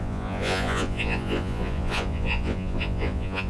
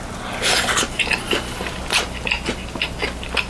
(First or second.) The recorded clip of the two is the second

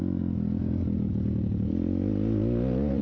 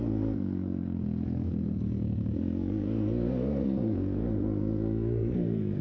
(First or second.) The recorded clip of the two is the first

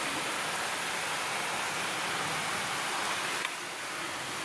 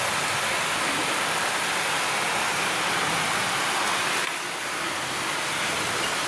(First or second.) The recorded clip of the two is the second